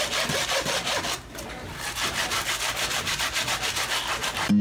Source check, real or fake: real